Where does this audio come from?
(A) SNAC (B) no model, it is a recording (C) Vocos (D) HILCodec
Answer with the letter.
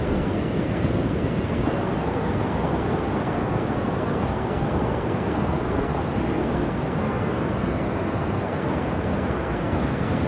A